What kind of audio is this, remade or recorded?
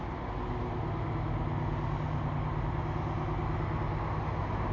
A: recorded